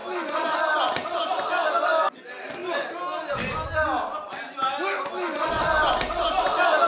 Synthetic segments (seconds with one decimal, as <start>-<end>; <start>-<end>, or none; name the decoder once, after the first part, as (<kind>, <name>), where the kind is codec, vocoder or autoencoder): none